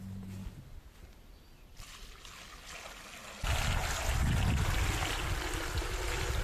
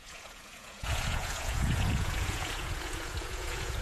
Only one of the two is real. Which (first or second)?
first